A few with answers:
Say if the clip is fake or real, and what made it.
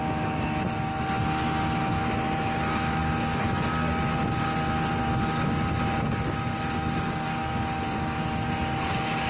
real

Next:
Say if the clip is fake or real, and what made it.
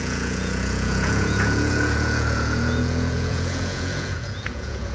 fake, vocoder, Vocos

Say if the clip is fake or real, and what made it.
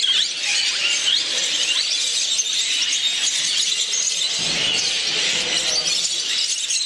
real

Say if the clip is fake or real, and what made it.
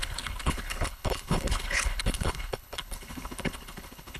fake, codec, HILCodec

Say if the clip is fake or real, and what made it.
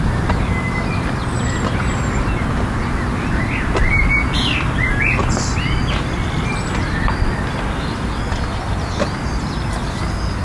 real